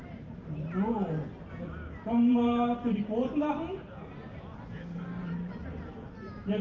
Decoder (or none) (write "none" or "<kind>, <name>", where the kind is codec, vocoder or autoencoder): vocoder, BigVGAN v2